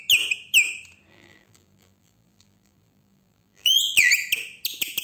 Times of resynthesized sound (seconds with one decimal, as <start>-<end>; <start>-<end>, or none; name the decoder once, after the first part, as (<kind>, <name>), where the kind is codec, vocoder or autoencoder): 1.1-4.1 (vocoder, BigVGAN v2)